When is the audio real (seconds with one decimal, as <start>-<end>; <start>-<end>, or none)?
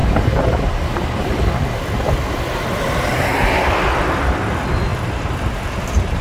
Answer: 1.5-4.9